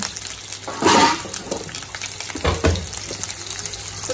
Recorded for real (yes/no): yes